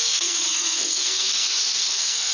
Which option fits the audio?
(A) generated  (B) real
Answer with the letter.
A